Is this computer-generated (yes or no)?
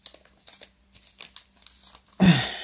no